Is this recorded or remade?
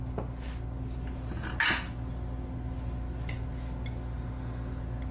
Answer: recorded